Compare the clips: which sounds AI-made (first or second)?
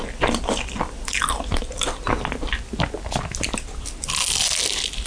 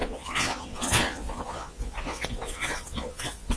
second